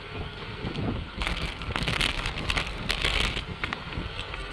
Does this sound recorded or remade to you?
remade